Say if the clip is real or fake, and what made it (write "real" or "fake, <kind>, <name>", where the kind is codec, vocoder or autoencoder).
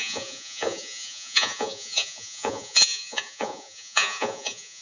fake, vocoder, Vocos